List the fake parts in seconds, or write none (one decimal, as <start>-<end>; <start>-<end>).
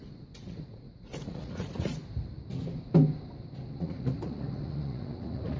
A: 0.0-2.0; 3.8-5.6